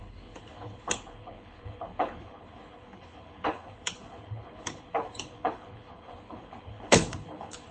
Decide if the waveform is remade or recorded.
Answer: remade